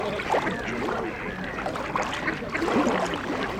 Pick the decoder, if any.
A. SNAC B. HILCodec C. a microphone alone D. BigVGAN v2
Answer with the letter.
C